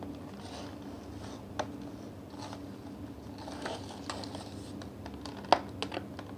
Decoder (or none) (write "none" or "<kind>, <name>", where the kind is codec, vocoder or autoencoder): none